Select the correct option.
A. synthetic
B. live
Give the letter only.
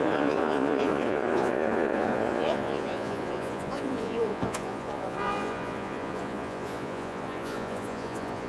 A